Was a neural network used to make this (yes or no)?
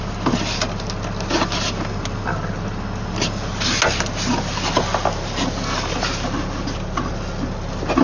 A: no